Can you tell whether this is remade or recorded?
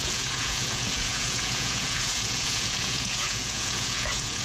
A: remade